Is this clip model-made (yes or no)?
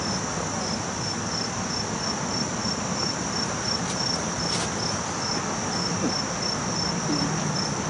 no